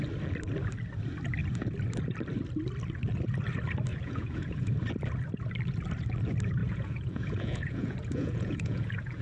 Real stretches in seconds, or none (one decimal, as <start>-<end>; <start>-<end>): 0.0-3.9; 4.7-6.6